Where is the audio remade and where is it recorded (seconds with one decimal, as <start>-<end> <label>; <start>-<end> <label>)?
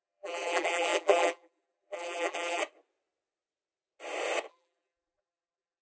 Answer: 0.0-2.6 remade; 2.6-4.5 recorded; 4.5-5.8 remade